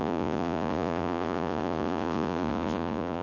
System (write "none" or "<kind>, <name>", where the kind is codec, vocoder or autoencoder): vocoder, Vocos